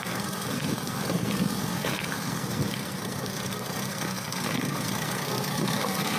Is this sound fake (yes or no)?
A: yes